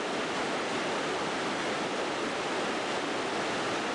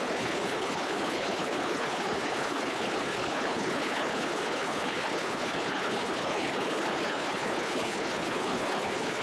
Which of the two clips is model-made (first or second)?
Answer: second